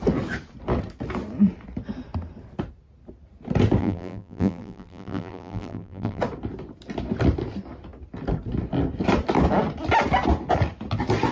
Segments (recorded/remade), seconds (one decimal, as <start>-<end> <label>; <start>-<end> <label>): 0.0-3.8 recorded; 3.8-6.2 remade; 6.2-11.3 recorded